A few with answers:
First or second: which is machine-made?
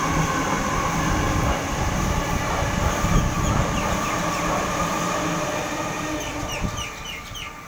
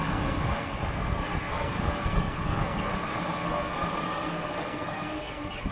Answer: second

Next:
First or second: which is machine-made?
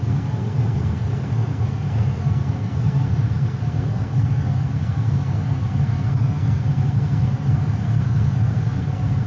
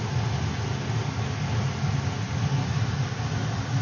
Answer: first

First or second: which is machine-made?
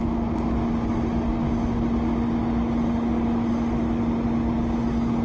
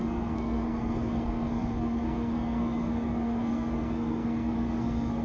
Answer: second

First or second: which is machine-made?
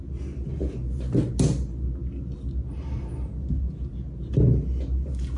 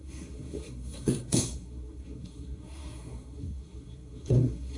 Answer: second